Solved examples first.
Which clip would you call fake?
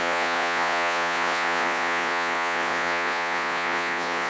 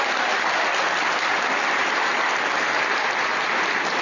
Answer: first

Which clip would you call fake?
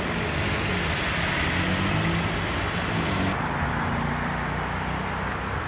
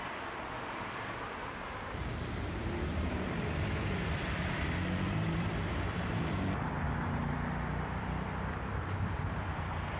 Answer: second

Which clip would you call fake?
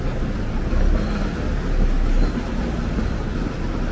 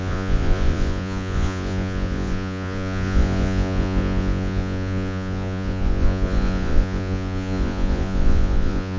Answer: second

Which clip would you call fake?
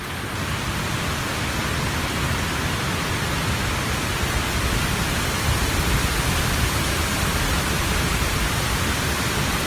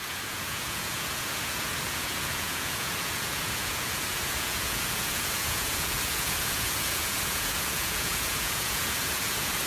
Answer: second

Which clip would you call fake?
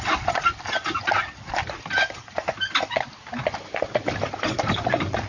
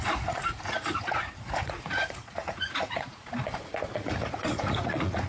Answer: second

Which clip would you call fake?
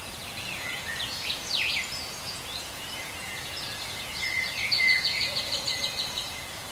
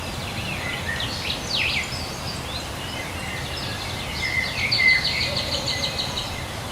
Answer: first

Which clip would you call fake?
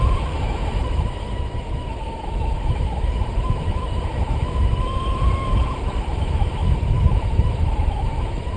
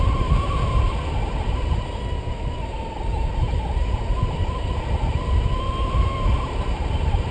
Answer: first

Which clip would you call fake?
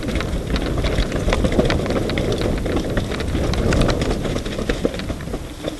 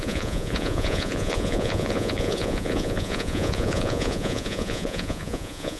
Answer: second